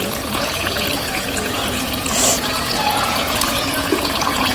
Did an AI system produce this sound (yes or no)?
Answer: yes